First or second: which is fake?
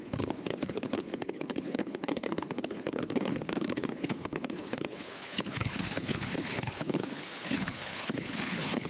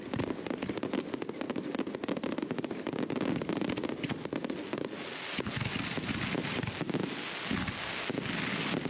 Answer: first